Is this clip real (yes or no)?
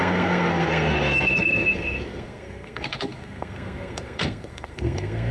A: no